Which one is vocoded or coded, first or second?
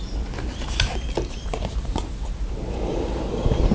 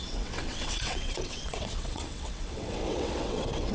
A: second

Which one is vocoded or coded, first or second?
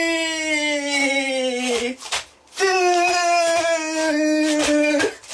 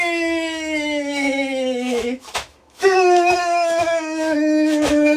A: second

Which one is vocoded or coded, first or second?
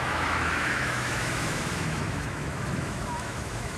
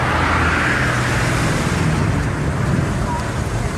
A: first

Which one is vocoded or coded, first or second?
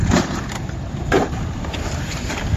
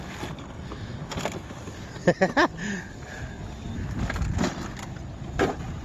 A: first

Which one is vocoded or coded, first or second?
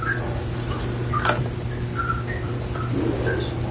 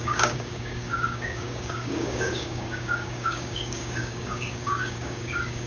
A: second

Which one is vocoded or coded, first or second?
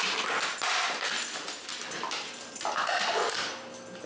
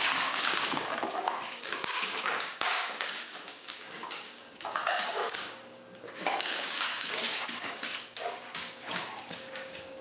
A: second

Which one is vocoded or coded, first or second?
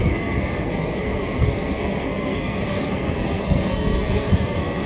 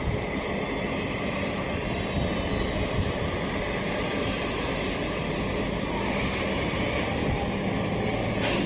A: first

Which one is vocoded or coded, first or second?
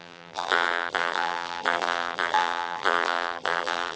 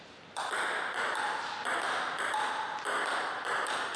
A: first